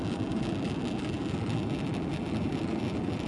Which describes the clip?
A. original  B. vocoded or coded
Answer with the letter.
B